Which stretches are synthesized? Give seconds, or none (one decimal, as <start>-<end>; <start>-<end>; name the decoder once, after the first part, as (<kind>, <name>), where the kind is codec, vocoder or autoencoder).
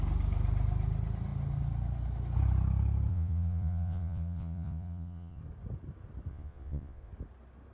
3.1-5.4 (vocoder, Vocos); 6.3-7.1